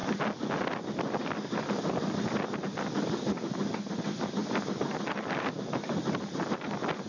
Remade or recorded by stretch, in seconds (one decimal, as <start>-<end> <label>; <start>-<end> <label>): 0.0-7.1 recorded

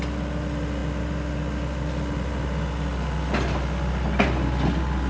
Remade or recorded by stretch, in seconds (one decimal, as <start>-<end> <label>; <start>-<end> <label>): 0.0-5.1 recorded

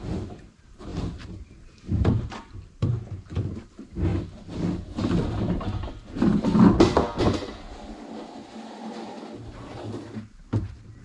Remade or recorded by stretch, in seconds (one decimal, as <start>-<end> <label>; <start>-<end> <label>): 0.0-4.1 remade; 4.1-5.9 recorded; 5.9-6.5 remade; 6.5-10.1 recorded; 10.1-11.0 remade

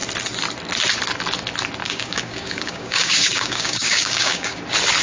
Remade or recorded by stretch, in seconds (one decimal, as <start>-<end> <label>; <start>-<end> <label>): 0.0-1.8 recorded; 1.8-4.6 remade; 4.6-5.0 recorded

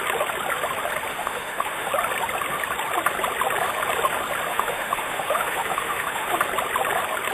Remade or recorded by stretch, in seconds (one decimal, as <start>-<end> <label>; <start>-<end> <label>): 0.0-1.1 recorded; 1.1-1.9 remade; 1.9-4.5 recorded; 4.5-6.4 remade; 6.4-7.3 recorded